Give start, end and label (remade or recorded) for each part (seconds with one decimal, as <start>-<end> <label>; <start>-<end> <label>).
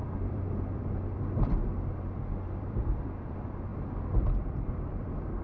0.0-1.6 remade; 1.6-2.3 recorded; 2.3-5.4 remade